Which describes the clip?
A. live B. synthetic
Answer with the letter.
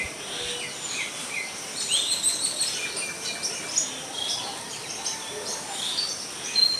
A